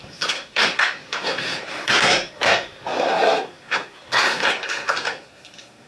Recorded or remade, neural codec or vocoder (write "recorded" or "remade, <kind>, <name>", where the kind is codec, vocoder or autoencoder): remade, codec, SNAC